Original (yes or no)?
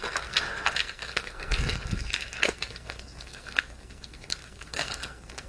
no